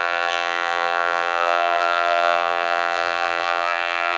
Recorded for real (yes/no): no